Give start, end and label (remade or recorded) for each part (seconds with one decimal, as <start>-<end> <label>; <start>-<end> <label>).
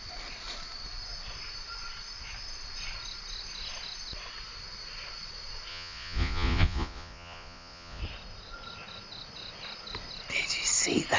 0.0-5.7 recorded; 5.7-8.0 remade; 8.0-11.2 recorded